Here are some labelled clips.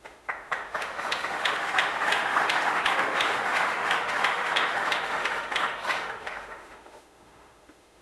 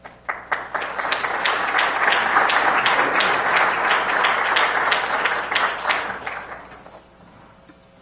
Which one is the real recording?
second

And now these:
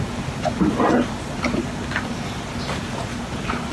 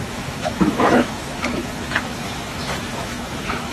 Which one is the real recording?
first